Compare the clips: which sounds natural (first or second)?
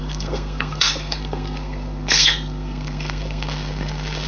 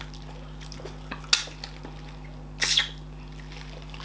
second